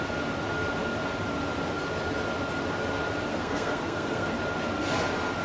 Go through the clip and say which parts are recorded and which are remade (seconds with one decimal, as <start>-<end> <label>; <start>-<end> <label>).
0.0-3.3 recorded; 3.3-4.3 remade; 4.3-5.4 recorded